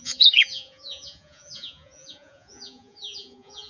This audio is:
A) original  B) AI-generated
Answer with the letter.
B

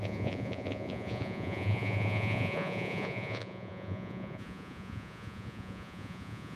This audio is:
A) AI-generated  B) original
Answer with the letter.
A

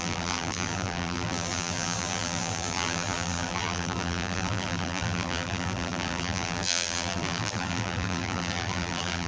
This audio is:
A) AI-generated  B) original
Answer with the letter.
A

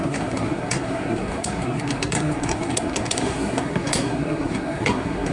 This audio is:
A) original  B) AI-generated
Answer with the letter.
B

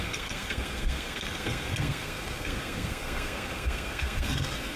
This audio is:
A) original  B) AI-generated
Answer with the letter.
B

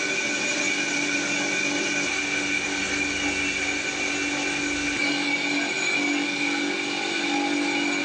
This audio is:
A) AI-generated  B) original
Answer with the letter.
B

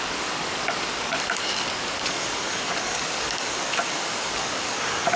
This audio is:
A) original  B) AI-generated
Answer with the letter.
B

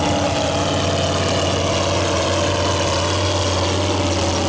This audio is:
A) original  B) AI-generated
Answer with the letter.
A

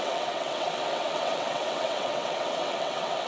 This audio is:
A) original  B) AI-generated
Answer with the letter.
B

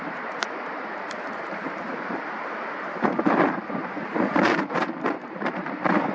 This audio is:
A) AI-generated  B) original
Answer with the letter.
A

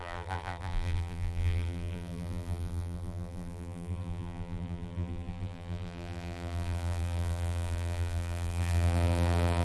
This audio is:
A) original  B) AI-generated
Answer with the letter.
B